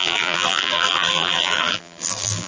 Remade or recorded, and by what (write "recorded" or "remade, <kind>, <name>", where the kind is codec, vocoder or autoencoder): remade, vocoder, BigVGAN v2